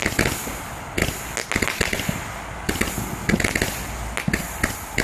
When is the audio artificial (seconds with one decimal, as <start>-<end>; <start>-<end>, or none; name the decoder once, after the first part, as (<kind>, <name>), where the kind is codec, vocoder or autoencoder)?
none